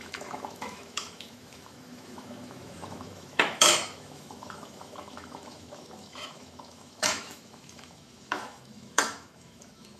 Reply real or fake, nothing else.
fake